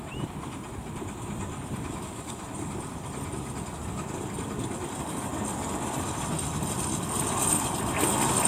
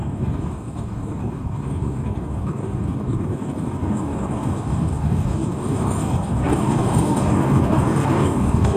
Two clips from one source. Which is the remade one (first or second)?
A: second